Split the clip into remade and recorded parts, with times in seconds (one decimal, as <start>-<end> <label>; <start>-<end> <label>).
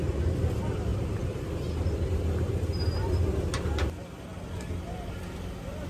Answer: 0.0-5.9 recorded